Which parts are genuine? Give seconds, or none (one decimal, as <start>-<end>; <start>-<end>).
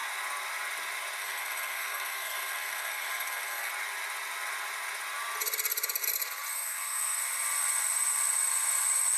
0.0-1.2; 3.7-6.5; 7.2-9.2